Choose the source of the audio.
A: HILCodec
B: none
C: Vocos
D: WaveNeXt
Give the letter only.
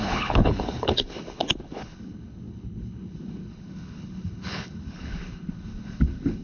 A